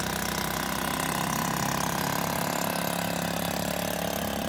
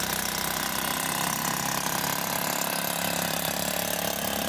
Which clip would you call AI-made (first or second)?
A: second